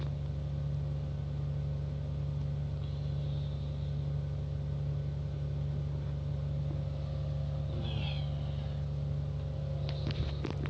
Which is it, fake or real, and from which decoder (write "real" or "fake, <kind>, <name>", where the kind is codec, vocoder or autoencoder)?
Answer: real